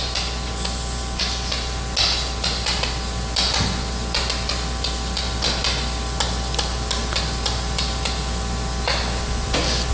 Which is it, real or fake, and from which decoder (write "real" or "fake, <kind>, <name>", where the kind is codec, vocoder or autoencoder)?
real